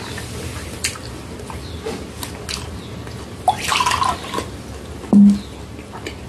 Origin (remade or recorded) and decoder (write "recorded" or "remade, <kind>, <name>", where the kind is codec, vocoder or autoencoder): recorded